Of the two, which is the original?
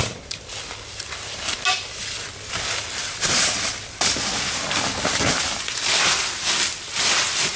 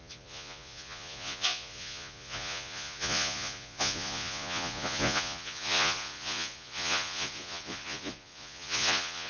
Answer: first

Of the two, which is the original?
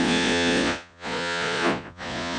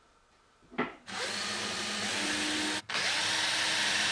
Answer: second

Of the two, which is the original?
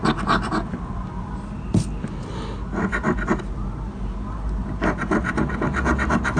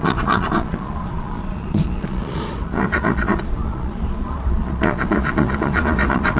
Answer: first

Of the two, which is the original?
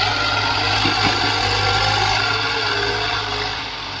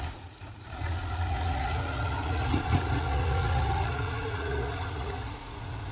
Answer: first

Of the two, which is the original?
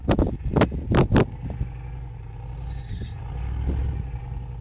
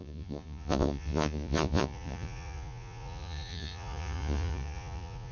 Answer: first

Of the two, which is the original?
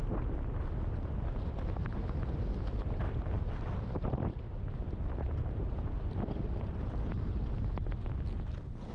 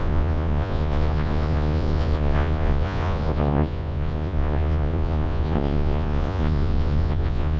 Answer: first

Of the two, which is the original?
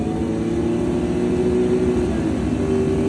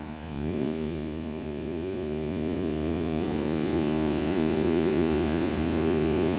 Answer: first